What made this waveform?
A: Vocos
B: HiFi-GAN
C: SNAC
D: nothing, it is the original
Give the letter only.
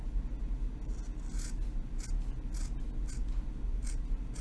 D